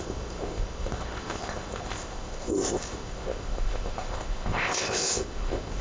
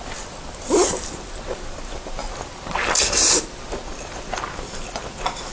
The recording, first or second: second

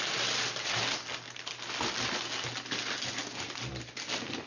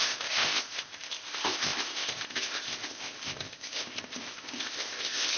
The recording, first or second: first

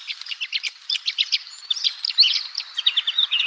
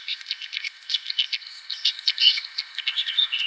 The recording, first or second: first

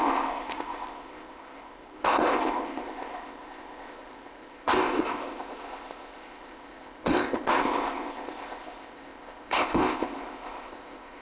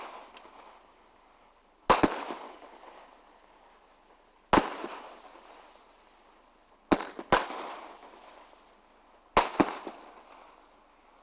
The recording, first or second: second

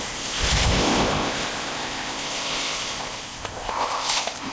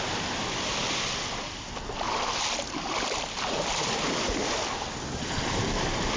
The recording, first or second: second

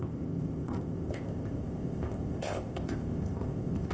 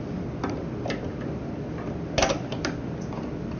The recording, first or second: second